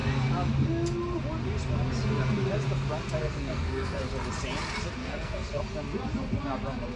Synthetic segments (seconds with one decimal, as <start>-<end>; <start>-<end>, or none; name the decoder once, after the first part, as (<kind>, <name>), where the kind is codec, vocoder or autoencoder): 3.2-4.0 (codec, SNAC); 5.0-5.6